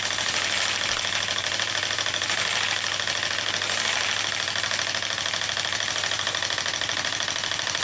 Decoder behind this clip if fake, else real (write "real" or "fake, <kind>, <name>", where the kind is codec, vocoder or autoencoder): real